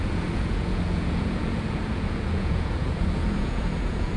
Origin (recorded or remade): remade